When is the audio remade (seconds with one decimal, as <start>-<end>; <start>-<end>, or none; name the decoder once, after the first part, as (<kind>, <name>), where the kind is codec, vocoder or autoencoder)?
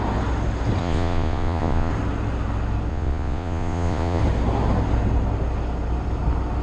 0.8-1.9 (vocoder, Vocos); 2.9-4.2